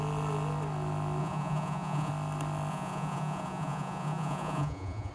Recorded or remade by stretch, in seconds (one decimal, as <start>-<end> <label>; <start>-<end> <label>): 0.0-1.2 recorded; 1.2-2.1 remade; 2.1-2.7 recorded; 2.7-5.1 remade